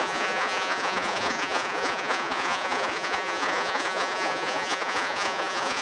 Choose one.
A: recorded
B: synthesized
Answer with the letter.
B